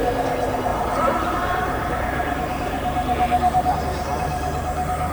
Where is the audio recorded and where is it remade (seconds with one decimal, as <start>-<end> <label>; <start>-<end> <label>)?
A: 0.0-0.7 recorded; 0.7-3.8 remade; 3.8-5.1 recorded